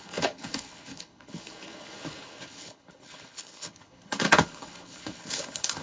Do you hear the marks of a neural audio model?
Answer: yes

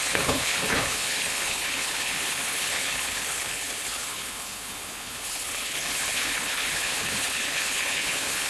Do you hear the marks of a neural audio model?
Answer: yes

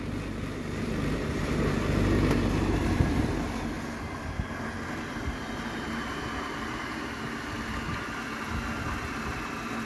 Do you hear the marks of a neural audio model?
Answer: no